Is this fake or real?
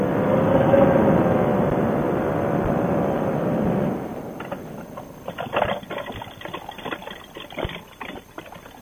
real